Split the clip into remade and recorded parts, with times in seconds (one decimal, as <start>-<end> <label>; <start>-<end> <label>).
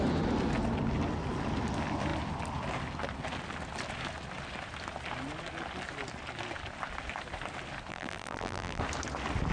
0.0-7.9 recorded; 7.9-8.8 remade; 8.8-9.5 recorded